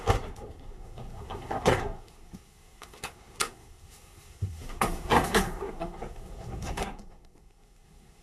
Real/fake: fake